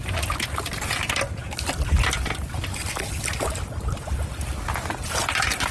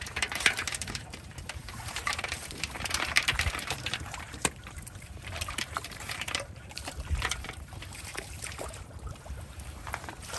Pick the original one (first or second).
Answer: first